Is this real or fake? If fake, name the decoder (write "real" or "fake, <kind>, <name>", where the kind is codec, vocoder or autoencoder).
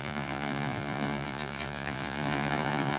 fake, vocoder, Vocos